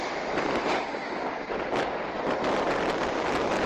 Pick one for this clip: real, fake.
real